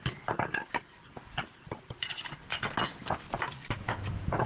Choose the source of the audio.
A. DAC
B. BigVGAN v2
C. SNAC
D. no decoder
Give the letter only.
D